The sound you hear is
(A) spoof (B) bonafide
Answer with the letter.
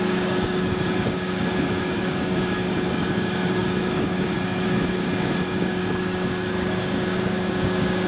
A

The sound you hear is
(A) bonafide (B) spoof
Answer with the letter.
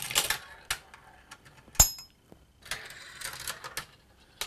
A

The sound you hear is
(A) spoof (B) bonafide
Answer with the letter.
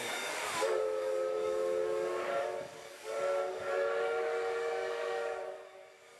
A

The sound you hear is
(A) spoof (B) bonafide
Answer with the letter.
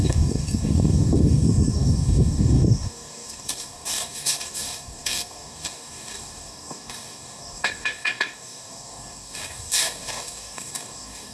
A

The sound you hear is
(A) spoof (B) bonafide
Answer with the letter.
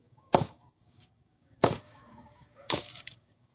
A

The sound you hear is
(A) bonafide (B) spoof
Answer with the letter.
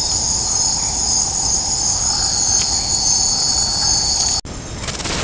A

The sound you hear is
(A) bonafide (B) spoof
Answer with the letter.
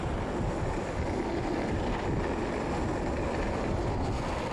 A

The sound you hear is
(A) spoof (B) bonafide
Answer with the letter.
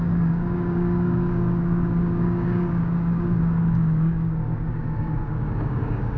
A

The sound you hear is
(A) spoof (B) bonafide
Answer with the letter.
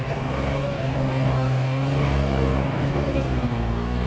A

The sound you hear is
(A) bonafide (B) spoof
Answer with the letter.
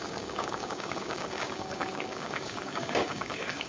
B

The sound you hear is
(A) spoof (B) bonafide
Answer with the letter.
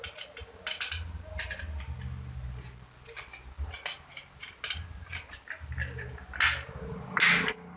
B